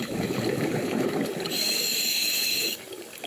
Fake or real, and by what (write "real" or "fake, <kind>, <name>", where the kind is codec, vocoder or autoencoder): fake, codec, DAC